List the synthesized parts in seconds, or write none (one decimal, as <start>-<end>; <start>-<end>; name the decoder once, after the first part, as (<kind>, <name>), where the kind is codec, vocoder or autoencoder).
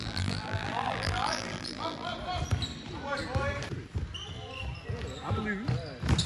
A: 0.0-2.1 (vocoder, BigVGAN v2)